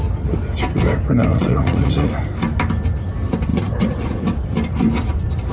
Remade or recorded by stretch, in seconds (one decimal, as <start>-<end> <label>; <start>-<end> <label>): 0.0-1.3 recorded; 1.3-2.1 remade; 2.1-3.5 recorded; 3.5-4.2 remade; 4.2-5.5 recorded

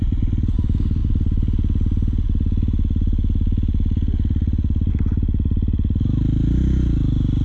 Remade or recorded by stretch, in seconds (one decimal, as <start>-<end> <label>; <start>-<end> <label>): 0.0-7.4 recorded

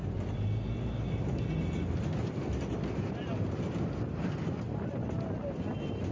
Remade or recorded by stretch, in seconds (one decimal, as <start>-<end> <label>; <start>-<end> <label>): 0.0-6.1 recorded

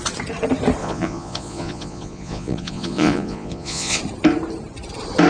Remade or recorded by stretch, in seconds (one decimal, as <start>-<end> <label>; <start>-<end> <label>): 0.0-0.8 recorded; 0.8-4.0 remade; 4.0-5.3 recorded

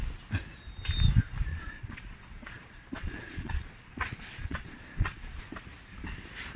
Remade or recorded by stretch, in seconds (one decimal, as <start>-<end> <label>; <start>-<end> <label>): 0.0-1.5 recorded; 1.5-5.4 remade; 5.4-6.6 recorded

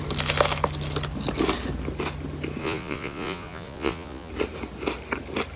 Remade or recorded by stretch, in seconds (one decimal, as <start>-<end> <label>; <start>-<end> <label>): 0.0-2.6 recorded; 2.6-4.3 remade; 4.3-5.6 recorded

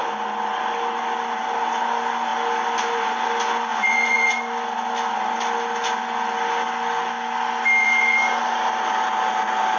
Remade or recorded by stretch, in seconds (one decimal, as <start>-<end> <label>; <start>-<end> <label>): 0.0-3.7 recorded; 3.7-4.3 remade; 4.3-7.8 recorded; 7.8-8.4 remade; 8.4-9.8 recorded

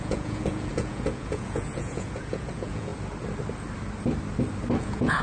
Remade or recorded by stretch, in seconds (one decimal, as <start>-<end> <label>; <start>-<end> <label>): 0.0-2.9 remade; 2.9-4.8 recorded; 4.8-5.2 remade